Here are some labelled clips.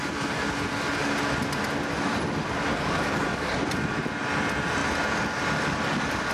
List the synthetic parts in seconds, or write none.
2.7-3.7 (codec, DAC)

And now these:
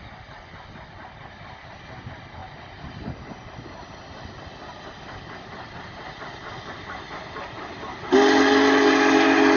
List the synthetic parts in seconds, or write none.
none

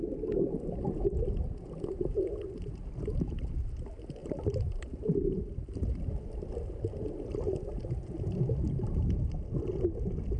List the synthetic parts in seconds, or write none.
none

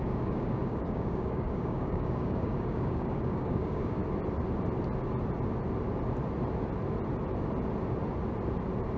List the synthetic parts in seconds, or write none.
0.0-4.0 (codec, DAC)

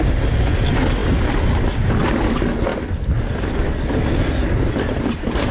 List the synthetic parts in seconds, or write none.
none

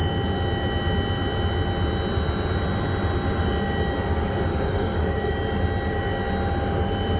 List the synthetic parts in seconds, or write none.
4.5-5.3 (codec, DAC)

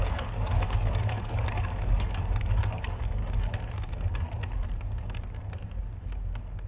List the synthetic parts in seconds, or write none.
0.0-3.2 (codec, DAC)

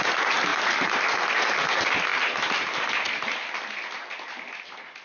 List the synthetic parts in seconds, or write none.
none